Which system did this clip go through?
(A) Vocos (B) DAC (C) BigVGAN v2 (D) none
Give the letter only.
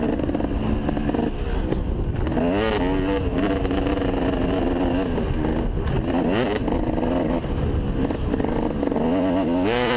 D